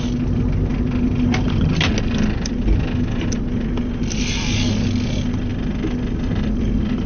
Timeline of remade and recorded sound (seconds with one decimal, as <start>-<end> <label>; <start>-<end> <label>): 0.0-7.1 recorded